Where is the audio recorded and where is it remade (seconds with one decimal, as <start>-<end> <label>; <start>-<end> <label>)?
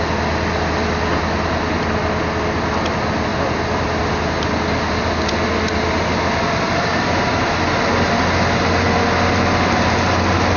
0.0-10.6 recorded